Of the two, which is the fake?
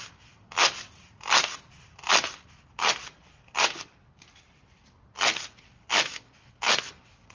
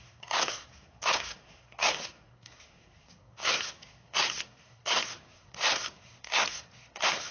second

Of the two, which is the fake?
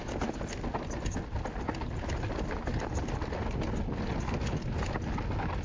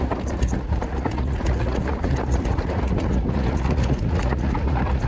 second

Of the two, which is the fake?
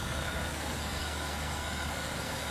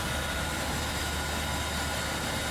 first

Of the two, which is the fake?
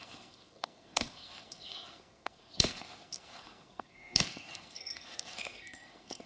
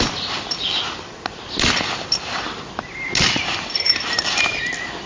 first